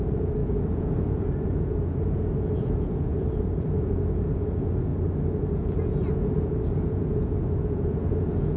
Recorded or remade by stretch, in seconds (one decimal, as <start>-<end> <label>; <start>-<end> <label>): 0.0-4.9 remade; 4.9-5.4 recorded; 5.4-8.6 remade